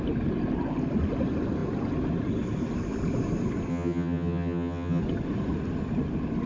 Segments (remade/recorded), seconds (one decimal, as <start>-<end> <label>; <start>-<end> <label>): 0.0-3.7 recorded; 3.7-5.0 remade; 5.0-6.5 recorded